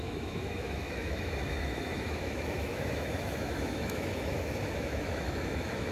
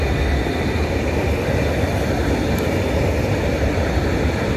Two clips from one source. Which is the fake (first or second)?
first